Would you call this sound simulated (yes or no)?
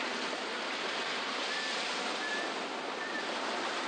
no